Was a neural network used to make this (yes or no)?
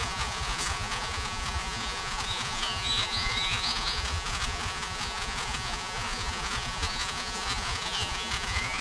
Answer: yes